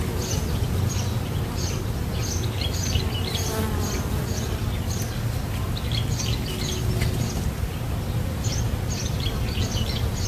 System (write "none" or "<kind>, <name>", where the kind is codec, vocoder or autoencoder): none